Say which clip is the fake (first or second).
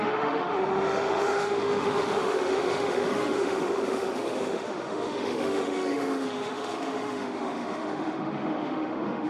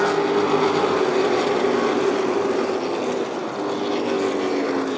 first